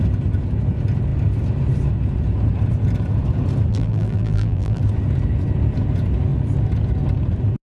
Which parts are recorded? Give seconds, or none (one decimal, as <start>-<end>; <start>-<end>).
0.0-3.7; 4.8-7.7